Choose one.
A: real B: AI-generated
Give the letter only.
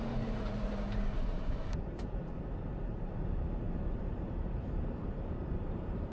B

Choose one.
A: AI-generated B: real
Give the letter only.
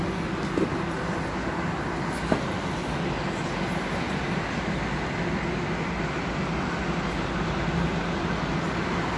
B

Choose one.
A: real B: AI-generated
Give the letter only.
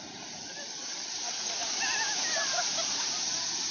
B